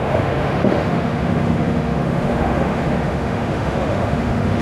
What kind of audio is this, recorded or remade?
remade